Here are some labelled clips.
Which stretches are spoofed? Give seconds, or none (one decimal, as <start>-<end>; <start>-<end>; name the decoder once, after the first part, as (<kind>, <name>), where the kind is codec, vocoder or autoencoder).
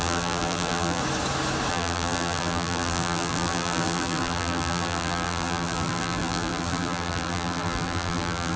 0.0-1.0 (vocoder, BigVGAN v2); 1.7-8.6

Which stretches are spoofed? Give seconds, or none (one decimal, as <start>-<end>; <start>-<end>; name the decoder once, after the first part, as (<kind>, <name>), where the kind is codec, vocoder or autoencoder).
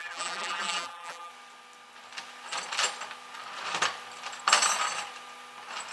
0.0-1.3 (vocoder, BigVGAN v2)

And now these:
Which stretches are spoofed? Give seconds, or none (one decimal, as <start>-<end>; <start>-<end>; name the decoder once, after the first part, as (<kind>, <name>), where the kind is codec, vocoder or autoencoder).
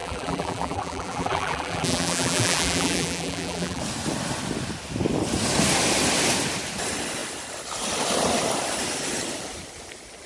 0.0-3.8 (vocoder, BigVGAN v2)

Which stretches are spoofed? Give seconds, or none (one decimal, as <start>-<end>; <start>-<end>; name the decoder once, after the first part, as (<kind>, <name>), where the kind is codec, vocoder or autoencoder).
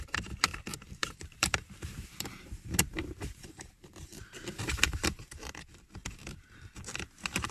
1.0-5.5 (vocoder, BigVGAN v2)